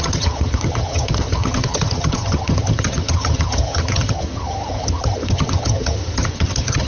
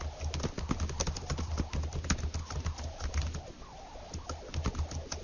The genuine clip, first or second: second